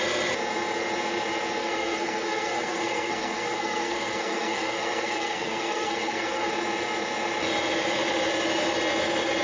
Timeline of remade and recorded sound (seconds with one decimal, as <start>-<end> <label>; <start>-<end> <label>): 0.0-1.6 recorded; 1.6-6.5 remade; 6.5-9.4 recorded